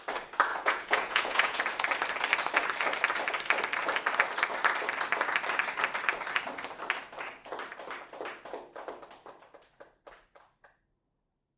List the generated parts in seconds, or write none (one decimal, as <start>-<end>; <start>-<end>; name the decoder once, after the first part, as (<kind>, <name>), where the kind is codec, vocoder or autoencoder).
0.5-1.6 (vocoder, Vocos)